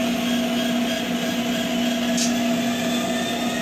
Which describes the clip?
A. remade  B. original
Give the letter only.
B